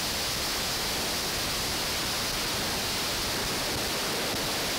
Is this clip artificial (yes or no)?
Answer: no